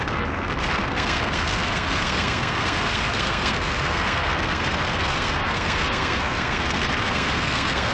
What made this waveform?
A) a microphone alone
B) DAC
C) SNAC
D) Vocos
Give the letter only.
C